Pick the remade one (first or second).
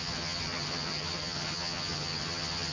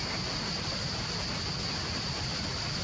first